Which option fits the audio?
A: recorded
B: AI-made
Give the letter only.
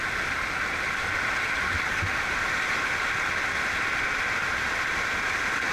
A